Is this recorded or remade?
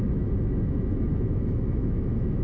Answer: remade